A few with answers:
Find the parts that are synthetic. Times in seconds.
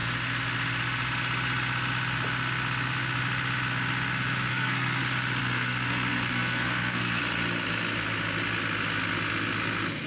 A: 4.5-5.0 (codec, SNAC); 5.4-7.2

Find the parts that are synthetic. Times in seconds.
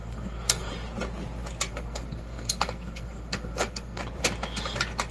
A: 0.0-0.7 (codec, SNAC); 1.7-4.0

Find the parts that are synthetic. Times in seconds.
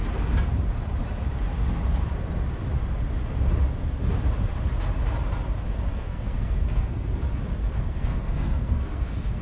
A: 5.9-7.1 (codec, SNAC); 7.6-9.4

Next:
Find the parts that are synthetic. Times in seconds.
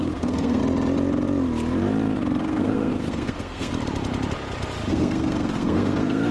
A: 0.0-0.6 (codec, SNAC); 2.4-3.7; 4.9-6.3